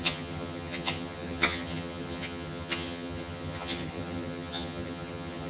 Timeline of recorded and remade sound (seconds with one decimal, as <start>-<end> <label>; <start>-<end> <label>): 0.0-5.5 remade